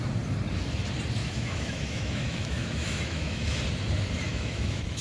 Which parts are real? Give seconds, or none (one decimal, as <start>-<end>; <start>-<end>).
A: 0.0-1.2; 3.6-4.3